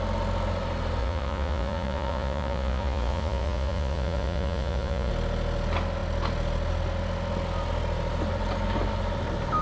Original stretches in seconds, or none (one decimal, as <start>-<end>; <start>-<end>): 0.0-1.0; 5.1-9.6